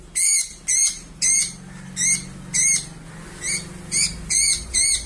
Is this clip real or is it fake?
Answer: real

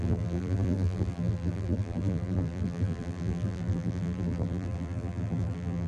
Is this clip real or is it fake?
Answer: fake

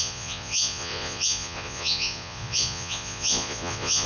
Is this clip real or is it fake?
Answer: fake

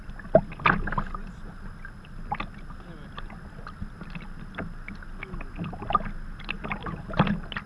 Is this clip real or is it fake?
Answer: real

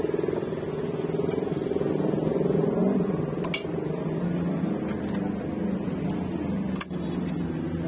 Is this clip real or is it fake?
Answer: real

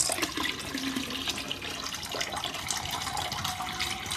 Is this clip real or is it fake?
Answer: real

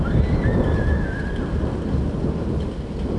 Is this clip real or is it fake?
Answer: real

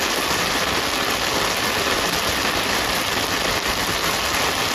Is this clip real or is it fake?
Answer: real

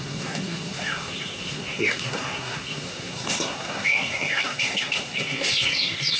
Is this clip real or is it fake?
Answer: fake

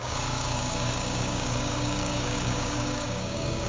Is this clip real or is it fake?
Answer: fake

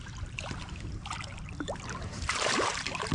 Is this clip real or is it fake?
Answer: real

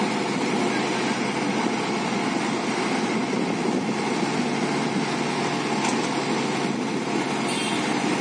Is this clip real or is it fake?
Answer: real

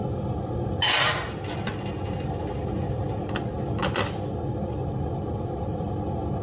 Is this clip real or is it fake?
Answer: real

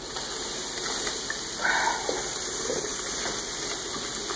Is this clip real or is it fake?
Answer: real